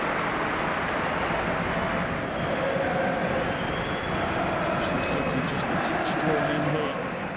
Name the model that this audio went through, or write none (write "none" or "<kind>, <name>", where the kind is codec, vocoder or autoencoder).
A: none